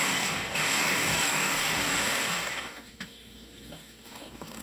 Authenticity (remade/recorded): remade